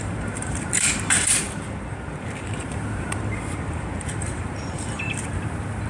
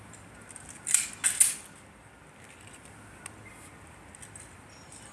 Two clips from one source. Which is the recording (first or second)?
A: second